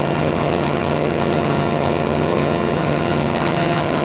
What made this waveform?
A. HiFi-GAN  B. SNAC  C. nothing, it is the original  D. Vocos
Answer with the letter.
A